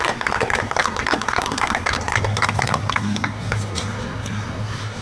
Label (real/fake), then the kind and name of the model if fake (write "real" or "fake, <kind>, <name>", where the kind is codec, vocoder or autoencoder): fake, codec, SNAC